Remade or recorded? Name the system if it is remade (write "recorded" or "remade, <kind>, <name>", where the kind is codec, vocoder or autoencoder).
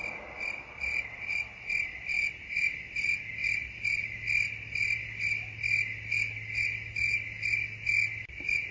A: recorded